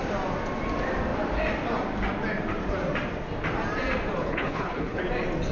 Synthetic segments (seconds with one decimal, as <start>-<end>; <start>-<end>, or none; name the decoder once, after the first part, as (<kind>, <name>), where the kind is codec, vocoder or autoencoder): 4.2-5.0 (codec, HILCodec)